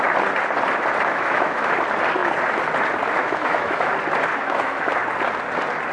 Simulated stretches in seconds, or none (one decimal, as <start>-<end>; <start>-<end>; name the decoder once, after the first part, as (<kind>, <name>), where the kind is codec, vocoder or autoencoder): 1.1-1.7 (autoencoder, DAC-VAE); 3.2-3.9; 4.3-4.9